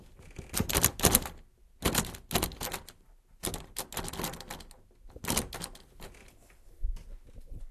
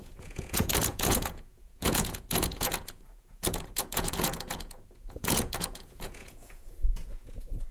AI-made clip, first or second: second